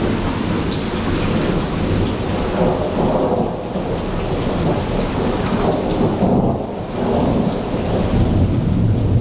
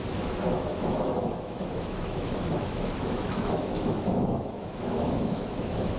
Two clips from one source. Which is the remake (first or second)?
second